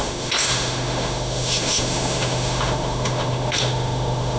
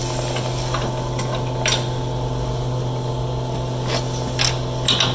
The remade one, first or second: first